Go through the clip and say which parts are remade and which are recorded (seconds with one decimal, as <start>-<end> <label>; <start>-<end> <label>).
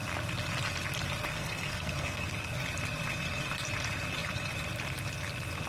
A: 0.0-1.3 recorded; 1.3-2.6 remade; 2.6-5.7 recorded